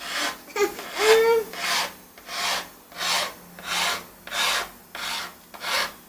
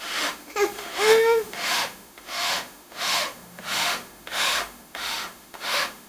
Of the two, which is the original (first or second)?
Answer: first